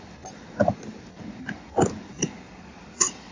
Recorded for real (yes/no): yes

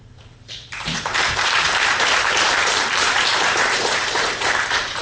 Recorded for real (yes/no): no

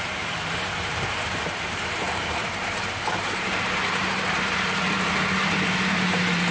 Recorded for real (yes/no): no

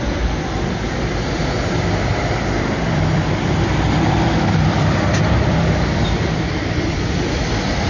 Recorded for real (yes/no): no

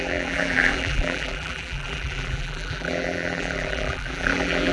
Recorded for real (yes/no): no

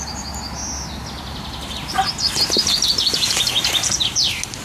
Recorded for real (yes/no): yes